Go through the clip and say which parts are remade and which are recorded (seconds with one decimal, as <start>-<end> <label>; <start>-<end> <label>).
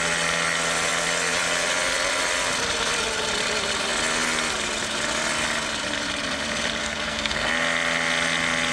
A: 0.0-6.8 recorded; 6.8-7.5 remade; 7.5-8.7 recorded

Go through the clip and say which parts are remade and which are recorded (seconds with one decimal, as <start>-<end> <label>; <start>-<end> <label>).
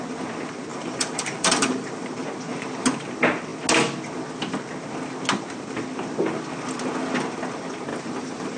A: 0.0-0.7 recorded; 0.7-2.1 remade; 2.1-7.9 recorded; 7.9-8.6 remade